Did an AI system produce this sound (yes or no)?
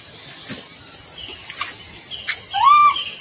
no